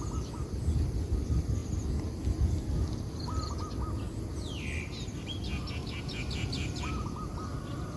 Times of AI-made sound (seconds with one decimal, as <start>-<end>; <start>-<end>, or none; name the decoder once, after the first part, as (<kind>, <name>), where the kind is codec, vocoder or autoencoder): none